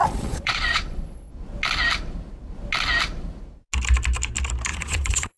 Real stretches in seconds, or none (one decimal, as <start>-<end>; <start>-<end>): 1.3-4.7